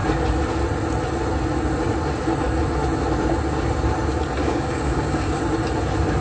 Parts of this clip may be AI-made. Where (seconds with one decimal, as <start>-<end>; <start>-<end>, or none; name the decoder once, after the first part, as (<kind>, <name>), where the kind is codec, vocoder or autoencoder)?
4.4-5.4 (codec, DAC)